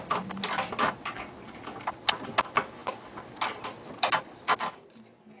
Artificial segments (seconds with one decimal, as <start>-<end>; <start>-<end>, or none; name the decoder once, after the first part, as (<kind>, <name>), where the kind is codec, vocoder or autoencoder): none